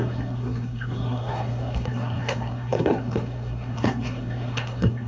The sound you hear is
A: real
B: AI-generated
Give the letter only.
B